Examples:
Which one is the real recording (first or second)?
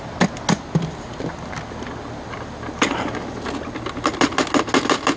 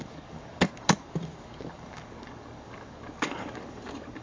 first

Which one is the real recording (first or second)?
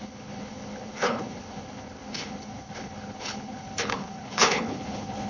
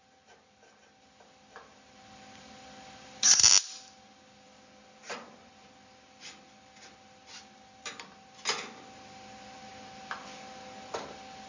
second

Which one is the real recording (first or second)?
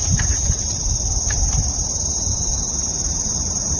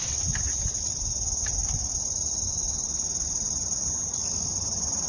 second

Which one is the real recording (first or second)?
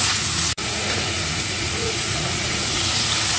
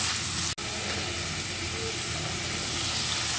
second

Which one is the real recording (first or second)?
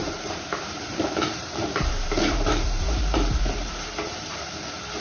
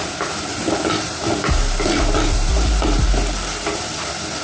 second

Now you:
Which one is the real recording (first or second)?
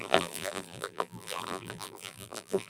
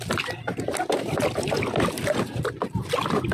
second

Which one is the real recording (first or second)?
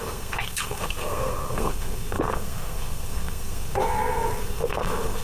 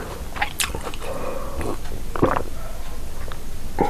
second